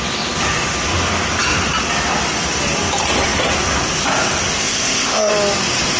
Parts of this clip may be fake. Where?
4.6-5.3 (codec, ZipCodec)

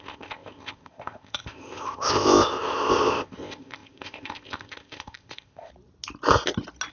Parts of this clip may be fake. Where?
0.0-5.7 (codec, ZipCodec)

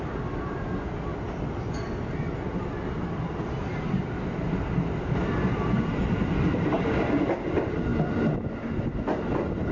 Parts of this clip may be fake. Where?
none

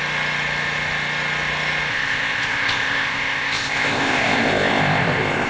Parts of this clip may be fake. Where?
1.9-5.5 (codec, ZipCodec)